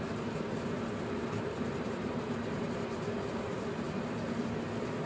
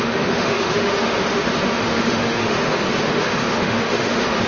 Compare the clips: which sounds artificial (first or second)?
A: second